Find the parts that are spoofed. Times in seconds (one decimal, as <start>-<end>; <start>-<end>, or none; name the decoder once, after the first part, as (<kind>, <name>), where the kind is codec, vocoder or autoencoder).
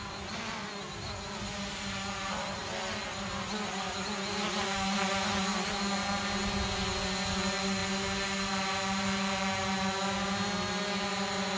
none